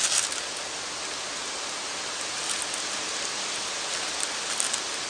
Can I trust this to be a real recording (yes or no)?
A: yes